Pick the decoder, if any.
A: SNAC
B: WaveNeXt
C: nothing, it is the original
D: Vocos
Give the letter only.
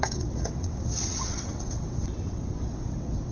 B